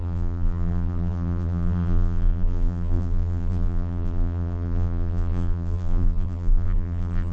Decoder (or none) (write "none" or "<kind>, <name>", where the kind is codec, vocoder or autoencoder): vocoder, BigVGAN v2